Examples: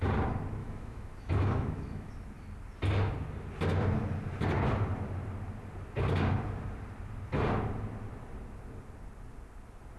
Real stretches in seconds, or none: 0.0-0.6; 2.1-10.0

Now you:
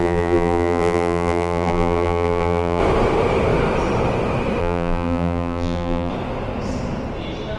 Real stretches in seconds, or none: 2.8-4.6; 6.1-7.6

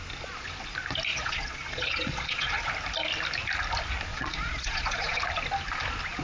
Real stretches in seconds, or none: 0.0-1.1; 2.7-4.1; 5.2-6.2

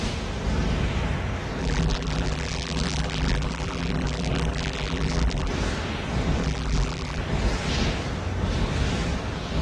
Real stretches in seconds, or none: 0.0-1.6; 5.5-6.4; 7.2-9.6